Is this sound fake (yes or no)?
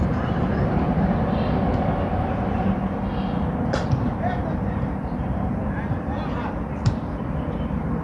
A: no